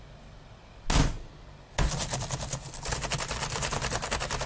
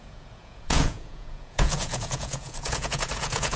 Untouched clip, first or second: first